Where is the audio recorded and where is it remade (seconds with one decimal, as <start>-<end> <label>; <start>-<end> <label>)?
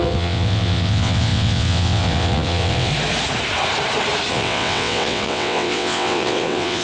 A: 0.0-2.9 remade; 2.9-4.3 recorded; 4.3-6.8 remade